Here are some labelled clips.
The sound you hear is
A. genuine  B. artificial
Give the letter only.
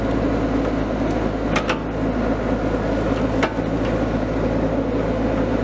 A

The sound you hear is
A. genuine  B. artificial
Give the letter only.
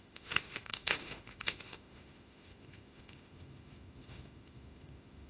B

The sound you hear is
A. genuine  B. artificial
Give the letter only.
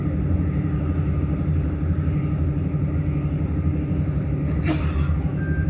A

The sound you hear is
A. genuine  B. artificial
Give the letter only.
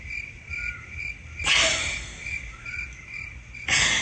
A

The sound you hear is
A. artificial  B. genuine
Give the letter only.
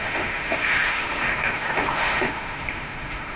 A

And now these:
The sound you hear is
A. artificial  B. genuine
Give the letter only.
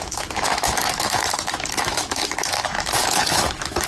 A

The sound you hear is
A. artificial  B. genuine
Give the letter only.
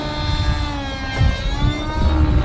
B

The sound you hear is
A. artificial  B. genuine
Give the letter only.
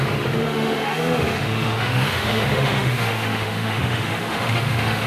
A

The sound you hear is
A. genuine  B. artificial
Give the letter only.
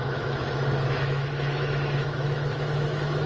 B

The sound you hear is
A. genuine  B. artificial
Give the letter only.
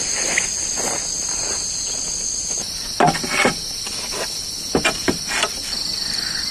A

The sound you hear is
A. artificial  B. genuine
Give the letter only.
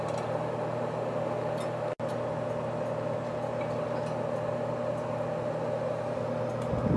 B